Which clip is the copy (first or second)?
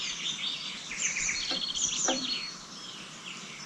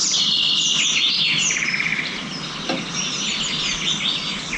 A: first